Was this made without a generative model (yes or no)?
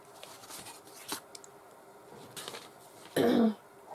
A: yes